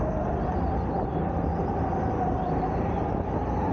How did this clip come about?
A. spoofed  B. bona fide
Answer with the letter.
B